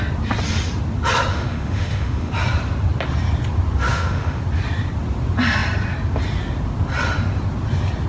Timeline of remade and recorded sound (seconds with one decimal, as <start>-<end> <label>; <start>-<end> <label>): 0.0-1.3 recorded; 1.3-2.3 remade; 2.3-3.9 recorded; 3.9-4.4 remade; 4.4-8.1 recorded